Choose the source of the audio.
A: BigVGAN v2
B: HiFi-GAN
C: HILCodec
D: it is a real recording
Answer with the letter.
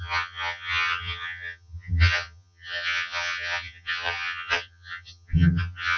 B